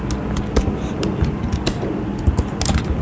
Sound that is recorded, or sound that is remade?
recorded